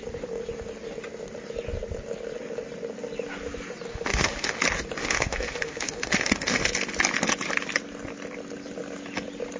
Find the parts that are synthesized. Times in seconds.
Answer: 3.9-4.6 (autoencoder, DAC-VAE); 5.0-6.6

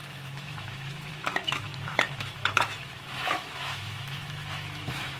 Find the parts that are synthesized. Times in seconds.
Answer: 0.0-5.2 (autoencoder, DAC-VAE)